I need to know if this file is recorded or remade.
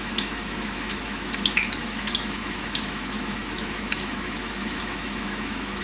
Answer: remade